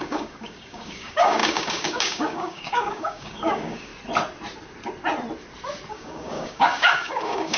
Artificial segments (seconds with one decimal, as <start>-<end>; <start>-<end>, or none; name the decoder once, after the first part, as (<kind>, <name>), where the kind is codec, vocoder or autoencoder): 0.0-3.9 (codec, DAC); 5.9-7.6